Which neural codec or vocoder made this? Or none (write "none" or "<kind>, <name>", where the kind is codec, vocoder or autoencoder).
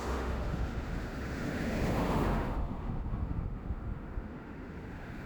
autoencoder, DAC-VAE